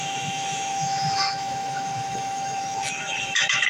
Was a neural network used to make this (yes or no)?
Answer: yes